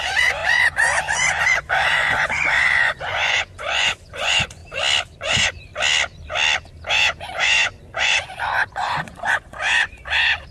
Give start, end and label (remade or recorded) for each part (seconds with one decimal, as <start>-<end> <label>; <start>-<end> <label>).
0.0-4.6 remade; 4.6-5.2 recorded; 5.2-5.7 remade; 5.7-6.9 recorded; 6.9-10.5 remade